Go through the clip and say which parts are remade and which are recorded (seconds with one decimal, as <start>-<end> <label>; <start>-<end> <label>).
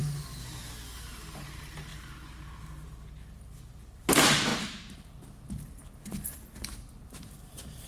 0.0-1.1 recorded; 1.1-4.5 remade; 4.5-7.0 recorded; 7.0-7.9 remade